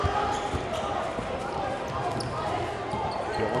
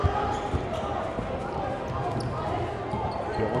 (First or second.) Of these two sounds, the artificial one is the first